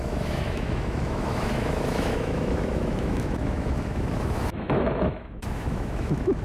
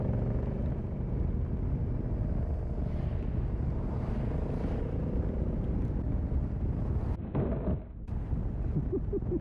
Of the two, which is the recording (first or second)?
second